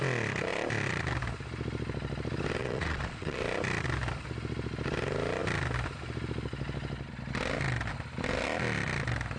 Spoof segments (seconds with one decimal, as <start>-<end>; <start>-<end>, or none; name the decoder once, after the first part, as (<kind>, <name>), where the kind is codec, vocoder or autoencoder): 2.6-3.4 (vocoder, Vocos)